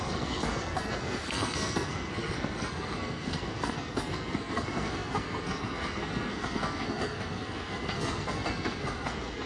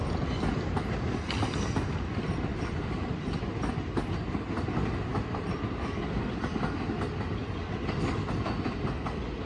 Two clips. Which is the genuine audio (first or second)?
second